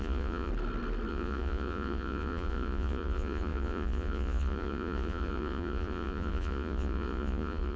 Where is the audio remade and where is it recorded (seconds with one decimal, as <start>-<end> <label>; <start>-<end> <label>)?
0.0-0.5 remade; 0.5-1.1 recorded; 1.1-7.8 remade